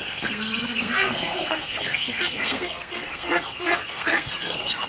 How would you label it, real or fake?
fake